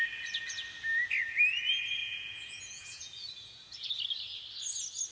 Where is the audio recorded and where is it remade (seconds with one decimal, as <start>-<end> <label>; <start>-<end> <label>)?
0.0-2.0 recorded; 2.0-3.9 remade; 3.9-5.1 recorded